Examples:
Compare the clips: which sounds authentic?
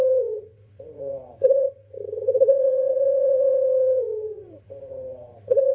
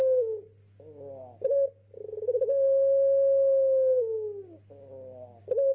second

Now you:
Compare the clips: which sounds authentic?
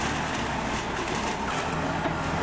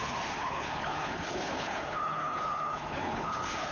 first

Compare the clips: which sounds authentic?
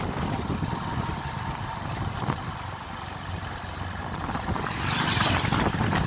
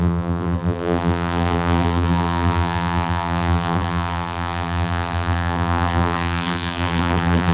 first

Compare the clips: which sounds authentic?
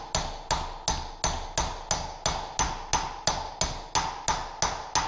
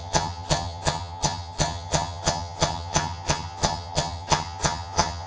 first